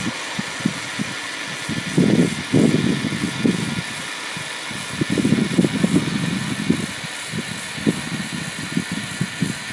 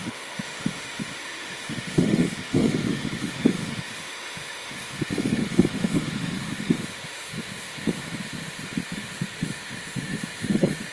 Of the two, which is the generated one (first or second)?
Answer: second